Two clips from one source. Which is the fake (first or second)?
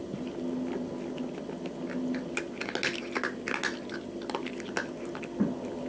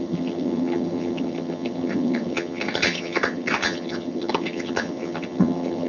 second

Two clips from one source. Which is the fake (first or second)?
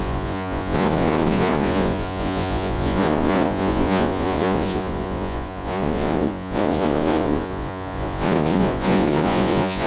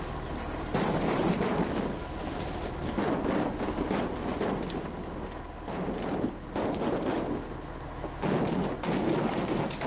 first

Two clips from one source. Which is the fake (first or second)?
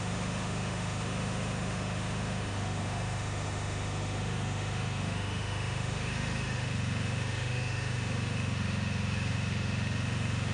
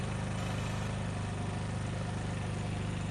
first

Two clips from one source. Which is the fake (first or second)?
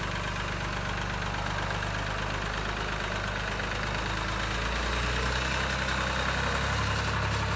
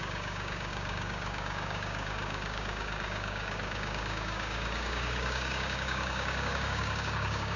second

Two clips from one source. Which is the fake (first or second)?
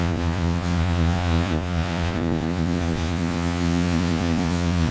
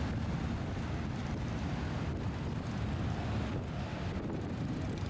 first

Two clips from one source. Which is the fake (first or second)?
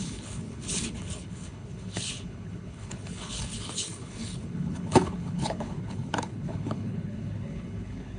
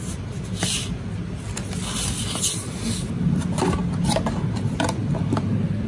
first